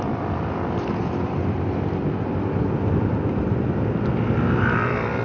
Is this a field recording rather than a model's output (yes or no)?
yes